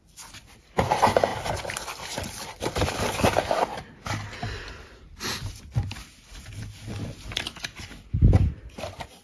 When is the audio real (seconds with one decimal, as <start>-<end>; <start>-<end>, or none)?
0.0-1.3; 3.5-9.2